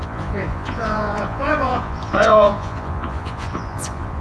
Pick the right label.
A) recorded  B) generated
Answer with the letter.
B